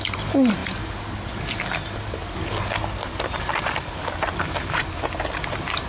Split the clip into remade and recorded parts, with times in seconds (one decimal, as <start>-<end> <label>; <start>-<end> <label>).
0.0-0.6 remade; 0.6-3.4 recorded; 3.4-4.8 remade; 4.8-5.5 recorded; 5.5-5.9 remade